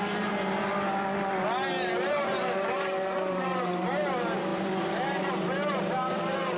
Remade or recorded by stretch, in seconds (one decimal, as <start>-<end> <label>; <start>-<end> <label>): 0.0-0.7 remade; 0.7-2.1 recorded; 2.1-6.6 remade